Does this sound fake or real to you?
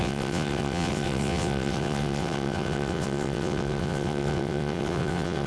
fake